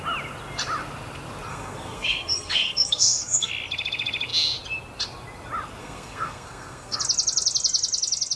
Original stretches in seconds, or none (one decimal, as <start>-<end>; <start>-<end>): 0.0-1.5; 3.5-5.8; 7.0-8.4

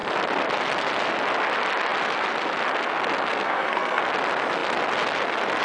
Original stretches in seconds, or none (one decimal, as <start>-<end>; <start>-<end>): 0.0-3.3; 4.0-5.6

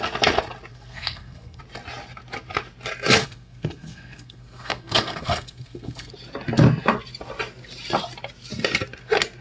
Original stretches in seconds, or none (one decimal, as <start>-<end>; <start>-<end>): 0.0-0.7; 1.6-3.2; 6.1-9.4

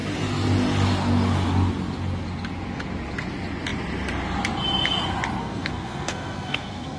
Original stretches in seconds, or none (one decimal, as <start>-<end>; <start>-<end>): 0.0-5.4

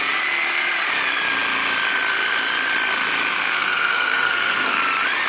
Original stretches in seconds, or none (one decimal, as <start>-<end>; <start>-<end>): 0.0-3.3; 4.8-5.3

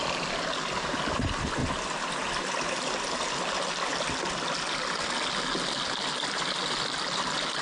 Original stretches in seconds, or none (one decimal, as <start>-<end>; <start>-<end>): 0.0-7.6

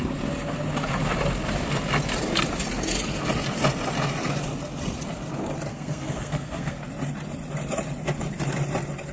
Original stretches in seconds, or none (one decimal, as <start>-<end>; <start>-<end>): 0.0-5.7; 6.8-9.1

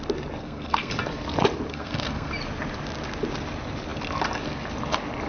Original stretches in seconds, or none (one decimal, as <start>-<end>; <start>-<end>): 0.0-0.4; 0.9-1.7; 2.3-5.3